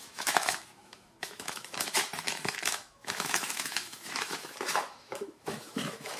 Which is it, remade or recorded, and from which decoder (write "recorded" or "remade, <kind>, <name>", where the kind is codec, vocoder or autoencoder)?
remade, autoencoder, DAC-VAE